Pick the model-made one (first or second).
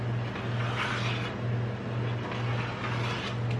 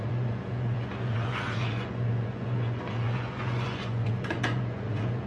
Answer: second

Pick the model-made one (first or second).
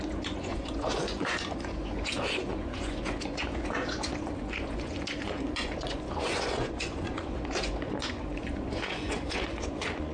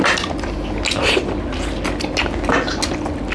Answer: first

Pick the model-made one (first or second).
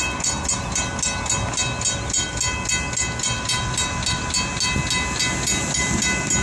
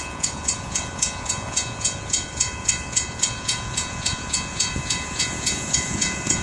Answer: second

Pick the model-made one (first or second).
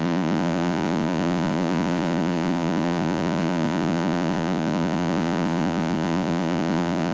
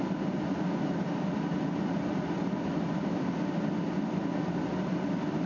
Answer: first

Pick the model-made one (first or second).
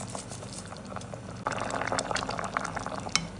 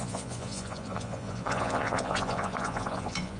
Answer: second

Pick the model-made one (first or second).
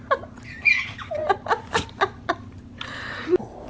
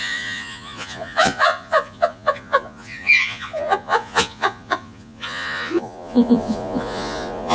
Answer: second